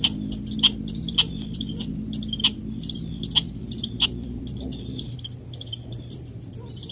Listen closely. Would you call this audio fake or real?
fake